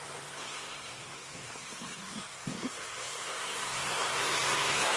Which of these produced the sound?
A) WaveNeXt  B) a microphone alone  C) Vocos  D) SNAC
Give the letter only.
D